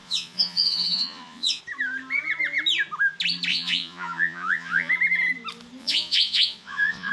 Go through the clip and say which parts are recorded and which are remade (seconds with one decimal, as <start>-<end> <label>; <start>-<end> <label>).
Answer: 0.0-1.6 remade; 1.6-3.5 recorded; 3.5-4.9 remade; 4.9-5.8 recorded; 5.8-7.1 remade